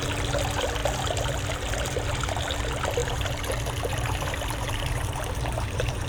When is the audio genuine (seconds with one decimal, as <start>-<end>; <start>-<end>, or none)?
0.0-3.0; 3.5-3.9